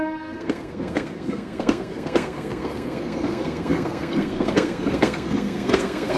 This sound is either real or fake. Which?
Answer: fake